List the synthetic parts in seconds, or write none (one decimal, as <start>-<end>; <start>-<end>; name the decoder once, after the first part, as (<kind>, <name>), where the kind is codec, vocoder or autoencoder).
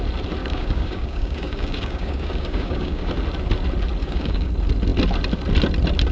0.4-3.1 (codec, DAC); 4.0-4.5